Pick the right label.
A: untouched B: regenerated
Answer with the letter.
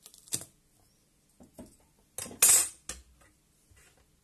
A